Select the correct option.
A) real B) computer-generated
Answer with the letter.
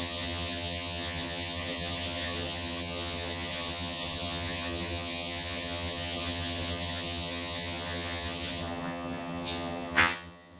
B